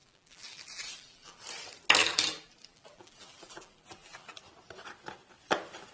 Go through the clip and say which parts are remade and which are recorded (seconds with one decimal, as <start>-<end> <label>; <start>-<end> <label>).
0.0-1.4 remade; 1.4-2.0 recorded; 2.0-4.4 remade; 4.4-5.9 recorded